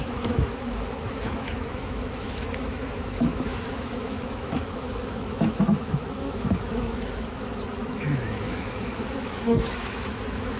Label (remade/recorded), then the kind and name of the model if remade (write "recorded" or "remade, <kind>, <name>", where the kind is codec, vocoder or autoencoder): remade, autoencoder, DAC-VAE